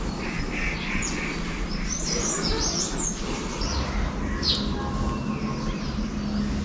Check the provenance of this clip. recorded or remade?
recorded